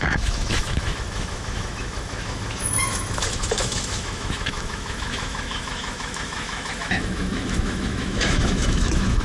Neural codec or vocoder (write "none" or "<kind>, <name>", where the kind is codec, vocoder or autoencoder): autoencoder, DAC-VAE